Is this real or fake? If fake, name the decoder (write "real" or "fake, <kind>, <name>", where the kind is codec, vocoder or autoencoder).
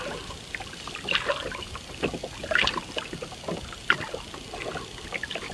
real